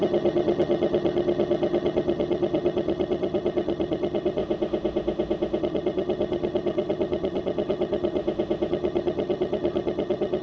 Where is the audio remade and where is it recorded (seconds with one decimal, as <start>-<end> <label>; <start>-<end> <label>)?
0.0-4.4 remade; 4.4-5.6 recorded; 5.6-8.2 remade; 8.2-8.7 recorded; 8.7-10.4 remade